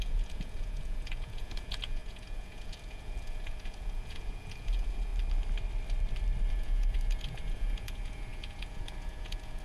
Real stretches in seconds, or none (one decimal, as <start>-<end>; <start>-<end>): 5.1-6.5

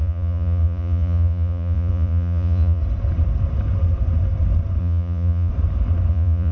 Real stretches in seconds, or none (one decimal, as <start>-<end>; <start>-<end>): 2.8-4.8; 5.5-6.1